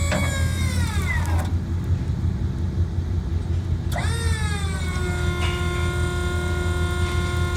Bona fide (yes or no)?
yes